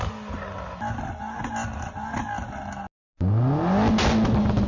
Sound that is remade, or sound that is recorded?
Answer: recorded